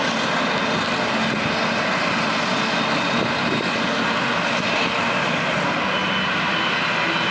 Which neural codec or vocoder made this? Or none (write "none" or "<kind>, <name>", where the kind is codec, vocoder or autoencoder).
none